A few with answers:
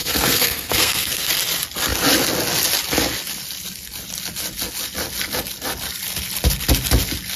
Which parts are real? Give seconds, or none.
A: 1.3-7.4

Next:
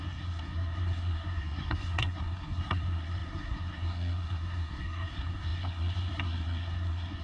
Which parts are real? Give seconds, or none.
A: none

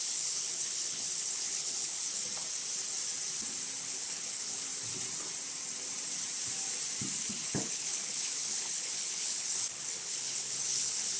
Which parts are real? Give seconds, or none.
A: 2.2-3.8; 4.7-7.2

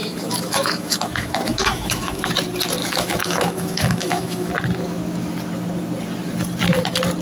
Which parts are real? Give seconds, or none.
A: 2.3-2.8; 4.5-7.2

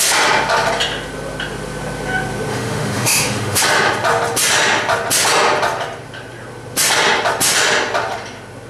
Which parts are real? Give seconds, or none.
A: 0.0-2.5; 3.6-8.7